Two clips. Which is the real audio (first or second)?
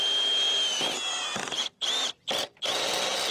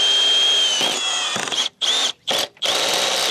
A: first